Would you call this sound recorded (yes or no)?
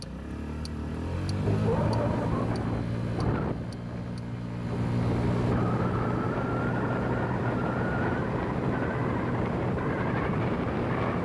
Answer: yes